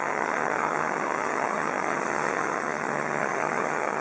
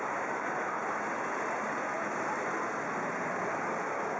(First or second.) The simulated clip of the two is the first